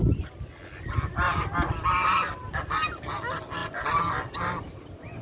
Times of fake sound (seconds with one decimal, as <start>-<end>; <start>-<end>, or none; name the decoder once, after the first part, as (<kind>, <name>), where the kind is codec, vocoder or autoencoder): none